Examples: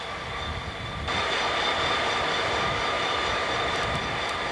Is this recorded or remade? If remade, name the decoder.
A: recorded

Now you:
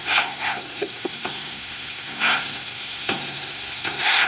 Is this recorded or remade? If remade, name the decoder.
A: remade, codec, SNAC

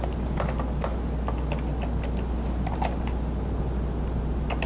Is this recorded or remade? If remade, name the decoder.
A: recorded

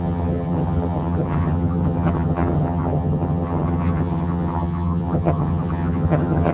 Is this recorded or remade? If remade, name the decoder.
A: remade, vocoder, HiFi-GAN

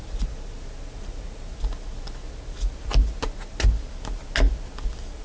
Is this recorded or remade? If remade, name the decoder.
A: recorded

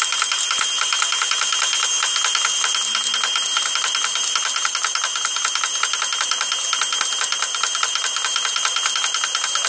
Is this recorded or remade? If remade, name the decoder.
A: recorded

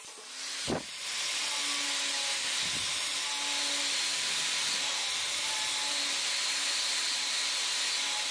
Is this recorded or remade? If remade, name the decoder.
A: recorded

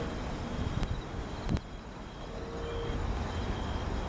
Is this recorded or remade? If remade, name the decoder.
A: recorded